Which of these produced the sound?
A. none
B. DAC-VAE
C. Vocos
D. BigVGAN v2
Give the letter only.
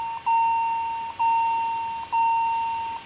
A